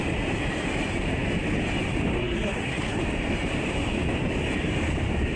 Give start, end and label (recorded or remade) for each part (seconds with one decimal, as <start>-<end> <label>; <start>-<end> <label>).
0.0-2.2 recorded; 2.2-3.0 remade; 3.0-5.4 recorded